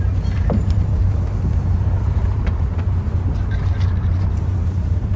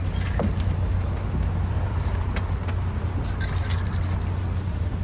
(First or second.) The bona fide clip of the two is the second